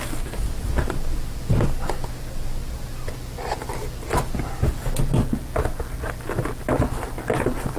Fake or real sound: real